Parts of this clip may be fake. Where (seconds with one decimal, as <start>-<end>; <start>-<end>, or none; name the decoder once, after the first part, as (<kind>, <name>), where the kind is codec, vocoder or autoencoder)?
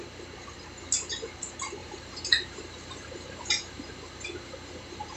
1.8-5.2 (vocoder, BigVGAN v2)